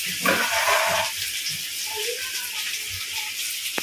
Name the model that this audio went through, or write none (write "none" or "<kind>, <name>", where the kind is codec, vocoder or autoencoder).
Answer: vocoder, BigVGAN v2